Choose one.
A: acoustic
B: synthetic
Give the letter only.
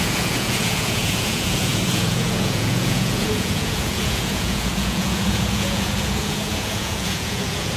B